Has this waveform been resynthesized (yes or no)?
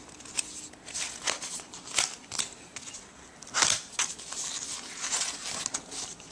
no